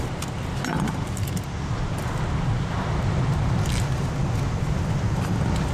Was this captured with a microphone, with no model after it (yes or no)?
yes